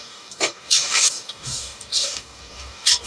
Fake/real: fake